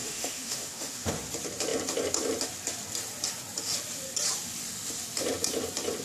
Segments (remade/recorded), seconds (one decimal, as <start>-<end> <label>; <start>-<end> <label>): 0.0-1.1 remade; 1.1-6.0 recorded